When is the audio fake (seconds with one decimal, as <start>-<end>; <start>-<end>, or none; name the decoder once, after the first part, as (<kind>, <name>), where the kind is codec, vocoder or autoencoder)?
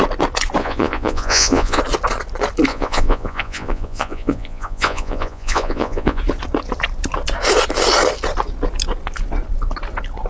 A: 0.6-1.8 (vocoder, Vocos); 2.7-6.2